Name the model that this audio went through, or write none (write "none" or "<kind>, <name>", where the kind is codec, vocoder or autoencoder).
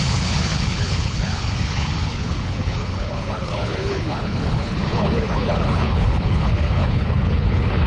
codec, HILCodec